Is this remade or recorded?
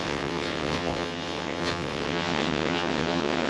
remade